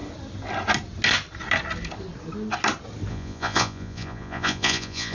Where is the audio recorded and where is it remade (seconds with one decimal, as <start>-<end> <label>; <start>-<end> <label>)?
0.0-3.1 recorded; 3.1-5.1 remade